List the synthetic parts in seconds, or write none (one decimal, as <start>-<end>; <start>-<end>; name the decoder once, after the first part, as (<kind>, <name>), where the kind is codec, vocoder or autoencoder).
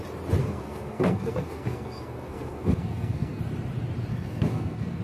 0.4-3.4 (codec, SNAC); 4.1-5.0